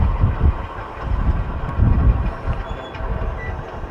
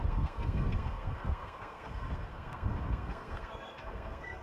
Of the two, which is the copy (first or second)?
second